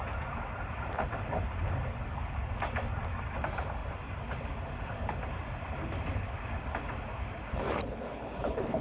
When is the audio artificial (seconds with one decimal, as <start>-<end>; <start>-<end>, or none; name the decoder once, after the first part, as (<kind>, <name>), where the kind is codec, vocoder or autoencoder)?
7.5-8.8 (codec, HILCodec)